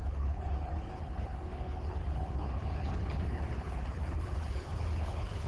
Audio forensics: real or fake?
fake